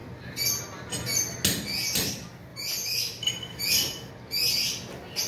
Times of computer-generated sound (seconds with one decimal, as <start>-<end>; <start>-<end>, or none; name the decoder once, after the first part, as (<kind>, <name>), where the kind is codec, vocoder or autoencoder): 2.5-4.1 (vocoder, BigVGAN v2)